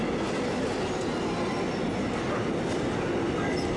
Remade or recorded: recorded